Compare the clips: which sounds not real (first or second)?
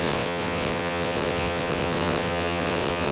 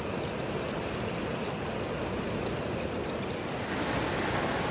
first